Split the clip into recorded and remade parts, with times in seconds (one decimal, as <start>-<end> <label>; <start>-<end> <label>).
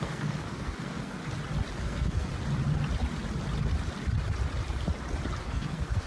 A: 0.0-1.2 remade; 1.2-1.8 recorded; 1.8-2.3 remade; 2.3-5.4 recorded; 5.4-6.1 remade